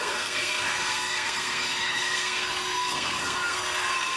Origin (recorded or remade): remade